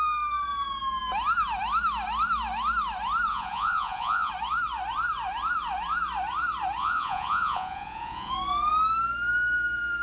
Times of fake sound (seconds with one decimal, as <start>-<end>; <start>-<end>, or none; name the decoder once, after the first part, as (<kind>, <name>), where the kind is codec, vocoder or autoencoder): 3.3-4.3 (vocoder, Vocos); 6.8-8.3